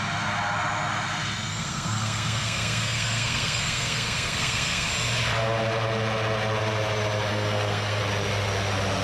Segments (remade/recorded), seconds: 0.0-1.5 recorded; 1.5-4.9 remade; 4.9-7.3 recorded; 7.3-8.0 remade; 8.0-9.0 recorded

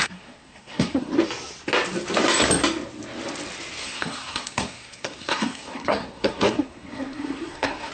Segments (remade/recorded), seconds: 0.0-1.1 remade; 1.1-3.8 recorded; 3.8-7.9 remade

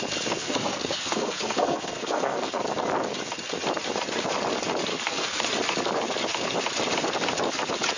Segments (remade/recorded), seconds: 0.0-0.4 recorded; 0.4-2.6 remade; 2.6-4.9 recorded; 4.9-5.4 remade; 5.4-8.0 recorded

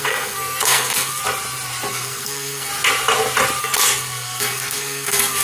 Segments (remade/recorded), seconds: 0.0-1.2 remade; 1.2-1.9 recorded; 1.9-2.7 remade; 2.7-3.6 recorded; 3.6-5.4 remade

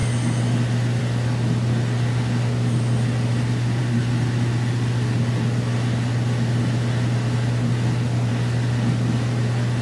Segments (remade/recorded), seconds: 0.0-9.8 recorded